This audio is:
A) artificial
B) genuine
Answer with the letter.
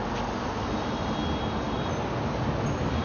B